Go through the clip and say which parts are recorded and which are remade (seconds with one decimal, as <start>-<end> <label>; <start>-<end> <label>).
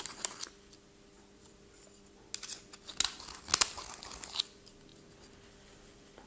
0.0-6.3 recorded